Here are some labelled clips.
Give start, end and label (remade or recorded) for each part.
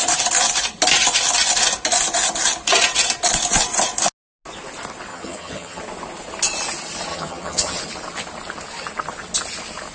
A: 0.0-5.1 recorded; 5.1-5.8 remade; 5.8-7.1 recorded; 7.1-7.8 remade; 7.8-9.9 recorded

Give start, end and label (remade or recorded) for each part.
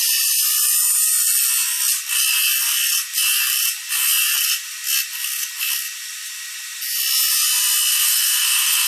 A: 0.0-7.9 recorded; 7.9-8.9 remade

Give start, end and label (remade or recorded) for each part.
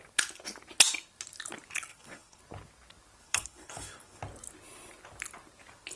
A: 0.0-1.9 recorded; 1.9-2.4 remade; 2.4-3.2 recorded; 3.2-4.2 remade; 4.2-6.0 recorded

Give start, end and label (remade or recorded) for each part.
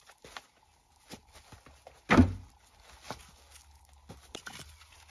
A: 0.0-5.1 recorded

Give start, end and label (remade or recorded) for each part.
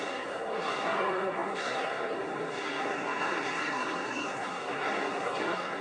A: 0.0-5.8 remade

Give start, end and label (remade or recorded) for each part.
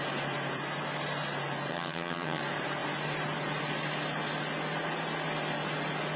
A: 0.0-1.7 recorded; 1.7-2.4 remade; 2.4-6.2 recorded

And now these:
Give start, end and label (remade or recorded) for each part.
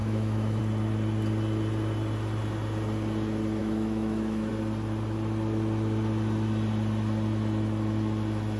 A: 0.0-0.6 remade; 0.6-3.6 recorded; 3.6-4.5 remade; 4.5-8.6 recorded